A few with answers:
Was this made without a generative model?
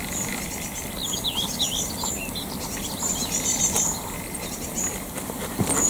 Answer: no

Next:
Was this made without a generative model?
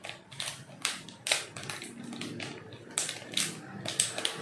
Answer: yes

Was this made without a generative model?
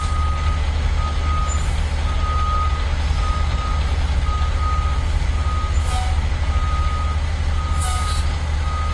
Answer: yes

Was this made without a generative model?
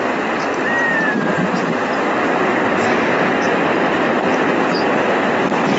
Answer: no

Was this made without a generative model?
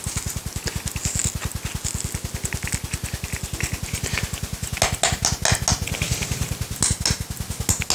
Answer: yes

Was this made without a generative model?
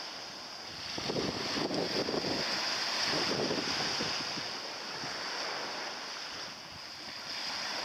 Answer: yes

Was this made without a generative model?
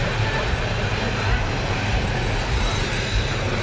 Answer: no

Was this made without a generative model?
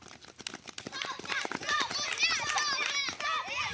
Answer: yes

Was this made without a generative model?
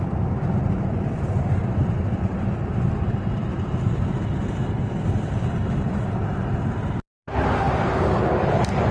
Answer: no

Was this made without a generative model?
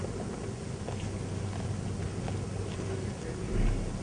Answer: yes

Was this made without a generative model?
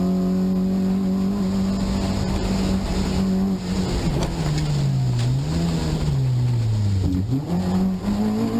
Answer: yes